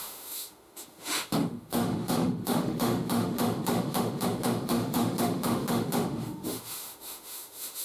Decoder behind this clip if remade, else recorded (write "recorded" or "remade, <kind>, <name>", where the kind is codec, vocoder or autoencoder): remade, autoencoder, DAC-VAE